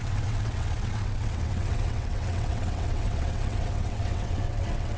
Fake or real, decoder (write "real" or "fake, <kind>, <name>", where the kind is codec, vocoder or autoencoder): fake, vocoder, WaveNeXt